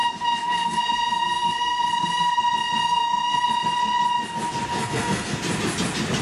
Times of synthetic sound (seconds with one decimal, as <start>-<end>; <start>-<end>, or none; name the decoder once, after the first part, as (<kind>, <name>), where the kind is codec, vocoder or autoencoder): 0.0-2.4 (codec, SNAC); 2.8-3.5; 4.7-5.4